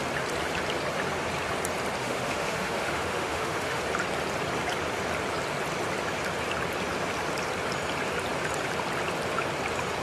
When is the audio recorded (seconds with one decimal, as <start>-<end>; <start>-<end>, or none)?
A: 0.0-2.0; 3.8-10.0